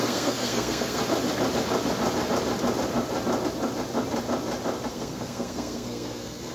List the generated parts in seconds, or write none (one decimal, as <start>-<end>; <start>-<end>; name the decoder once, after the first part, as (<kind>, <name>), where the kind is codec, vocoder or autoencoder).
0.0-1.0 (codec, SNAC); 4.9-6.5